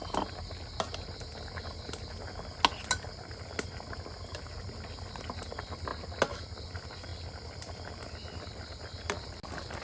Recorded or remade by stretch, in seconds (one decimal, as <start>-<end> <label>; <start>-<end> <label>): 0.0-9.8 recorded